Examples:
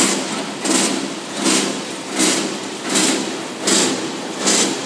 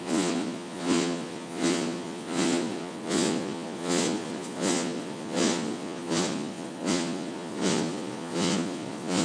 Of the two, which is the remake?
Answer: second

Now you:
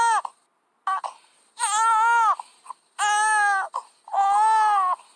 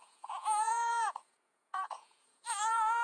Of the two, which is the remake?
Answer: second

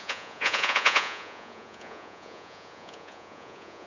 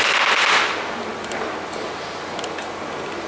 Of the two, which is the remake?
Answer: first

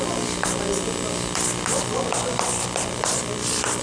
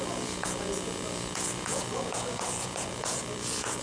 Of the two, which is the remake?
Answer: second